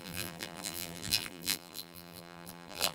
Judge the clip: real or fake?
fake